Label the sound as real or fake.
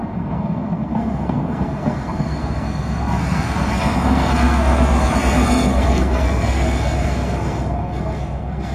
fake